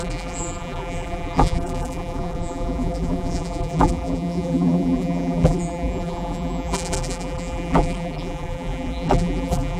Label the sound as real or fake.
fake